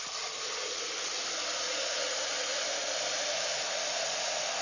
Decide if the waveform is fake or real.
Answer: real